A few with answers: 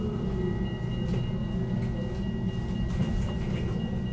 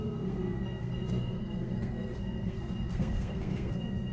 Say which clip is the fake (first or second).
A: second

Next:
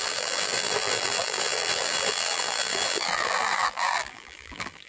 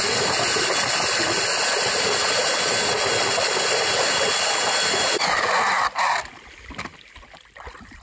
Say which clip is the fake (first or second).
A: first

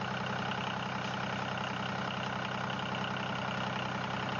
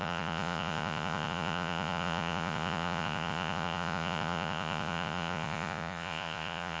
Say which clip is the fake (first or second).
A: second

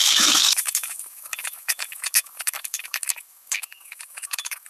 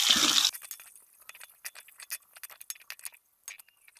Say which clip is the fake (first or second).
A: first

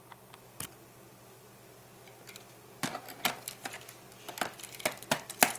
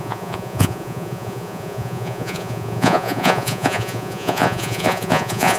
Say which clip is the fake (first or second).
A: second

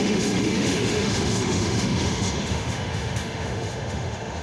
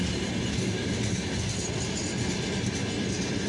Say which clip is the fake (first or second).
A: first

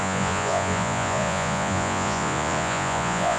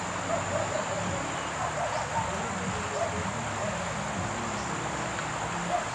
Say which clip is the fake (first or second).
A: first